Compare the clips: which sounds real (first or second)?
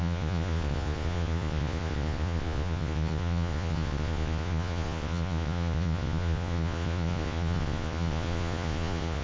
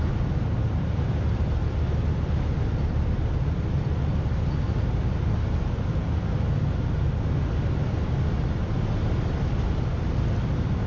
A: second